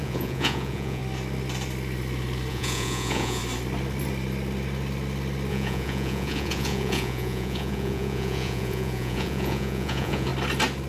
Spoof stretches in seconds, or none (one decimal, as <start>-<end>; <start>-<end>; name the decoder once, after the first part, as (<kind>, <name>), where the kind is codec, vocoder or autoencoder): 0.0-1.0 (vocoder, Vocos); 2.5-3.4; 5.5-10.3